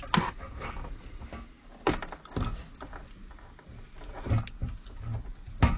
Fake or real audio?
real